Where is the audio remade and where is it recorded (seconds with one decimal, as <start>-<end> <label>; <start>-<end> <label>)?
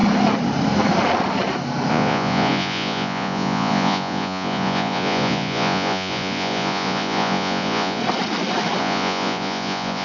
0.0-1.9 recorded; 1.9-8.0 remade; 8.0-8.8 recorded; 8.8-10.0 remade